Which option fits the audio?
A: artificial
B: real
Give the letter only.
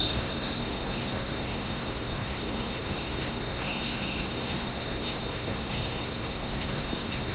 A